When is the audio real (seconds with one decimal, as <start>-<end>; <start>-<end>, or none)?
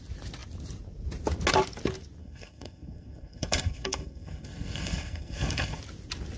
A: 0.0-2.2; 5.8-6.4